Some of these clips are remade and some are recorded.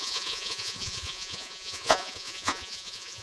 remade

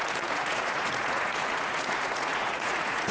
remade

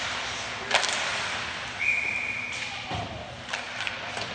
recorded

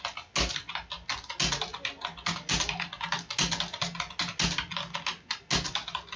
recorded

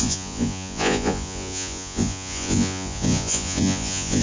remade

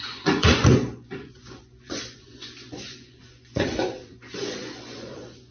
remade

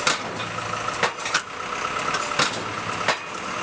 recorded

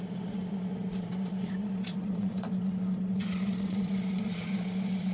remade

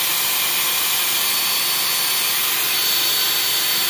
recorded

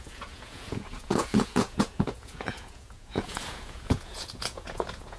remade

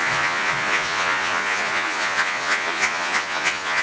remade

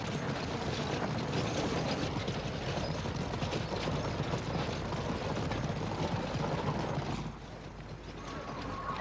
recorded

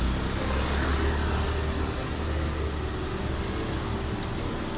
recorded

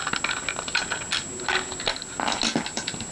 recorded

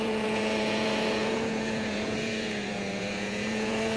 remade